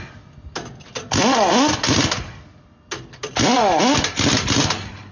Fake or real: real